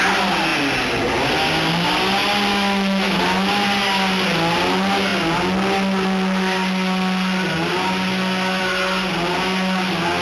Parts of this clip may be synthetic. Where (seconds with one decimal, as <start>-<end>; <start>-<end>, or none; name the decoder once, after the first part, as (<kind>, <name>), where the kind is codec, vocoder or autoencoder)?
2.5-3.2 (autoencoder, DAC-VAE)